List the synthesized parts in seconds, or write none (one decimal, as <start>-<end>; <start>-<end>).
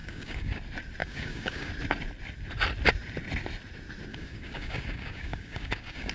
0.0-0.6; 1.0-1.7; 4.1-6.1